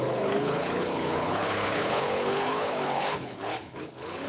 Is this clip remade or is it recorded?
remade